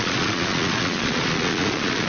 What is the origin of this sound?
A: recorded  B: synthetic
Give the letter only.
B